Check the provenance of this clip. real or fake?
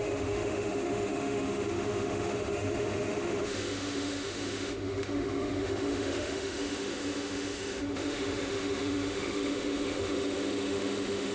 fake